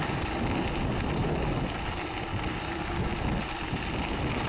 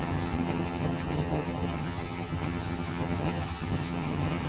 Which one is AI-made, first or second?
second